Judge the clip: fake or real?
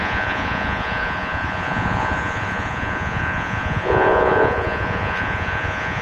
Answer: fake